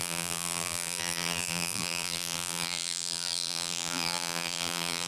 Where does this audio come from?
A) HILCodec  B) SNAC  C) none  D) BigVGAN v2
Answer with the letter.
D